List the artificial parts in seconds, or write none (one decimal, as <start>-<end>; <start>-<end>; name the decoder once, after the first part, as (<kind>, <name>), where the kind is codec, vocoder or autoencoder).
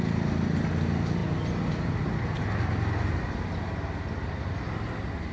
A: none